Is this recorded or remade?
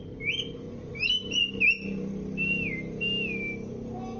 recorded